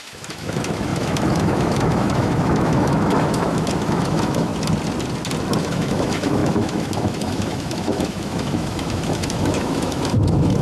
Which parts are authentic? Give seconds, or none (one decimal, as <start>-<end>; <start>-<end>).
4.5-5.6